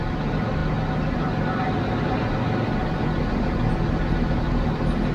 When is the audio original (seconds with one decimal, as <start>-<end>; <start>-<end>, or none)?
0.0-5.1